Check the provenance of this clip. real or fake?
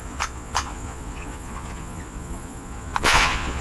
fake